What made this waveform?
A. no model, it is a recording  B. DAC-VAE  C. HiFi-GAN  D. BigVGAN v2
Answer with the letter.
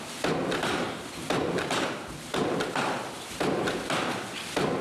D